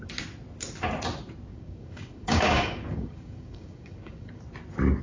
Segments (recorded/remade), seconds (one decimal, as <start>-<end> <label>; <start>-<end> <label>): 0.0-1.5 recorded; 1.5-4.4 remade; 4.4-5.0 recorded